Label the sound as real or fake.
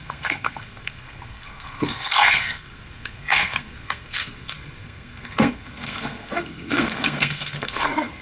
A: fake